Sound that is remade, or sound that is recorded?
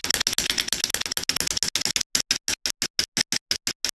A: recorded